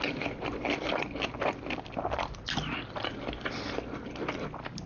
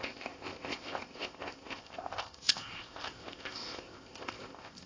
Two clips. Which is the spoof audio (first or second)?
second